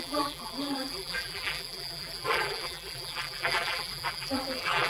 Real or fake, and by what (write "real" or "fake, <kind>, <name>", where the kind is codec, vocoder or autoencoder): fake, vocoder, BigVGAN v2